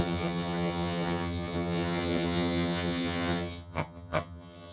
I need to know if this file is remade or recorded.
remade